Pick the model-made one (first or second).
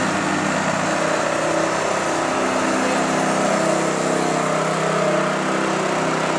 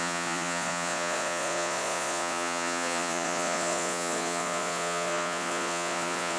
second